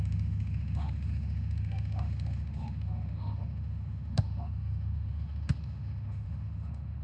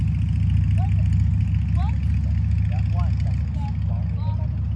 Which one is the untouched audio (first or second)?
second